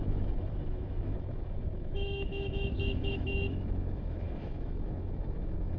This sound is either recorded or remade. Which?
remade